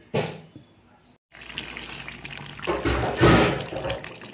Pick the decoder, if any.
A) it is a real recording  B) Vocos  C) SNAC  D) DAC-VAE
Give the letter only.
A